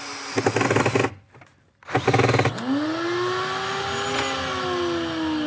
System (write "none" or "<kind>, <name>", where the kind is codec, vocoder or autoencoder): none